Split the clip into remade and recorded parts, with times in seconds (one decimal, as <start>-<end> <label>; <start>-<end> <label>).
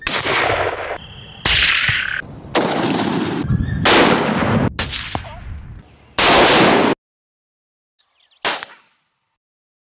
0.0-10.0 recorded